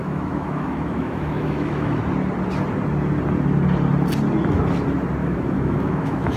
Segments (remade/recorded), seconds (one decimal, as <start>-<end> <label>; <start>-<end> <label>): 0.0-2.0 remade; 2.0-5.2 recorded; 5.2-6.4 remade